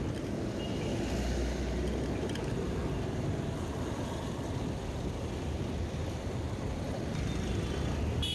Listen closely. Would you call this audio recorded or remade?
recorded